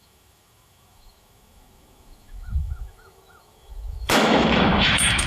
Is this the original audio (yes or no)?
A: no